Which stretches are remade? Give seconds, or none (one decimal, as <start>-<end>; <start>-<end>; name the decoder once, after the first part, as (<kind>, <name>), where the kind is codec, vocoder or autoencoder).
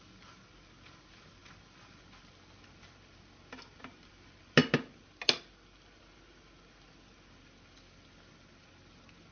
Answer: none